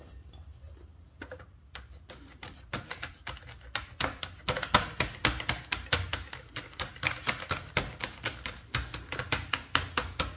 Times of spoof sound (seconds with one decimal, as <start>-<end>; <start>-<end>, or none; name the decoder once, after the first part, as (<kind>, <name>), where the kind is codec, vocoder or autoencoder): 0.9-3.1 (vocoder, BigVGAN v2)